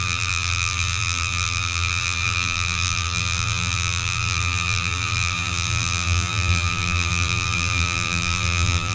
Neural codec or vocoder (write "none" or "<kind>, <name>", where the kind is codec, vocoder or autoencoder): vocoder, BigVGAN v2